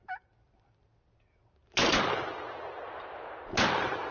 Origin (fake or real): real